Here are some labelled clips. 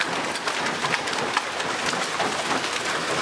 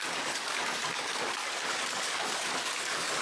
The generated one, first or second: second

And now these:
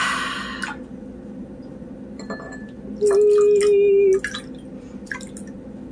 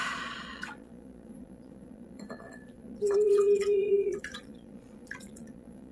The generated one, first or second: second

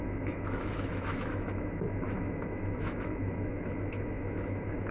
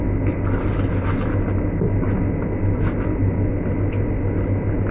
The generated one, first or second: first